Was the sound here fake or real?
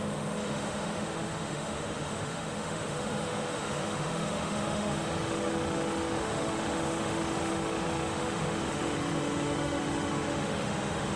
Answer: fake